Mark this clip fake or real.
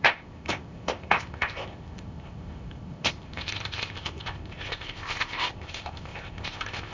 fake